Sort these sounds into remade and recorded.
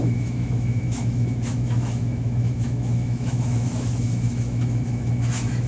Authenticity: remade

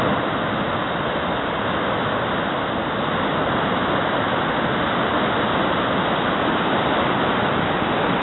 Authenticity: recorded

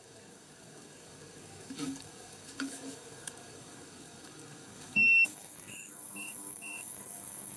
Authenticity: remade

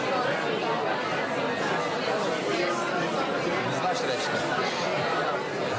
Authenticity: recorded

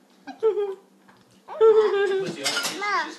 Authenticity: recorded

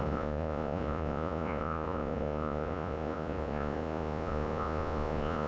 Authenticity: remade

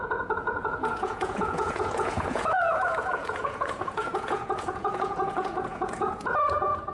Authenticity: remade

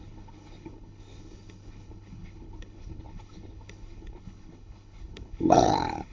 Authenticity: remade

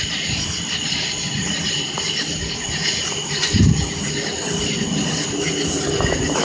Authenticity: recorded